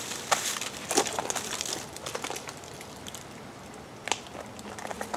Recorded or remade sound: recorded